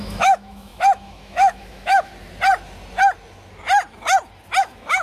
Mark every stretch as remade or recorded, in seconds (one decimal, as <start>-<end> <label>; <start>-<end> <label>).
0.0-2.1 remade; 2.1-4.6 recorded; 4.6-5.0 remade